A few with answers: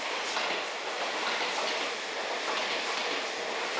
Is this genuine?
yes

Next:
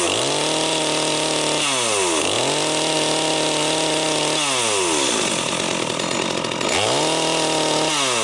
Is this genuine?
yes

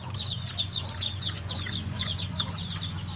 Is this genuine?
no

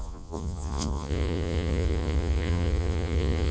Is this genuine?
no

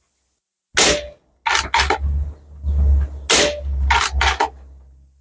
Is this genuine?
yes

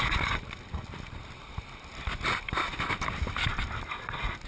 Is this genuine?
yes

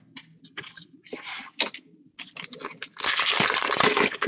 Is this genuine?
yes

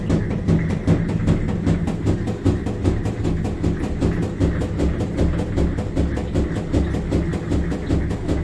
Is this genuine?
yes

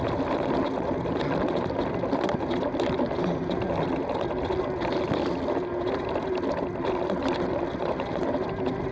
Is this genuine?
yes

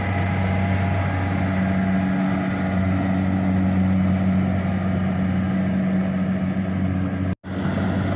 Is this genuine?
yes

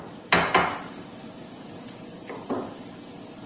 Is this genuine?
yes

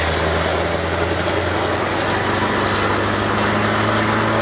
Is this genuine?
yes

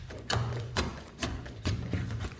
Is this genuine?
no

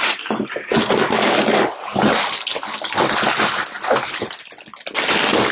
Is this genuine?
yes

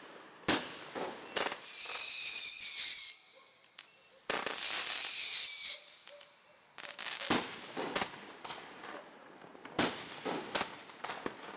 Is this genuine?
yes